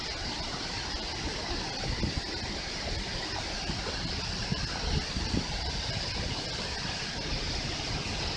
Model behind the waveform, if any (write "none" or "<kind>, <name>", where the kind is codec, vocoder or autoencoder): none